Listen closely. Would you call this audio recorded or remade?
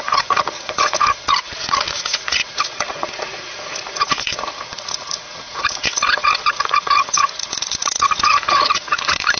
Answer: remade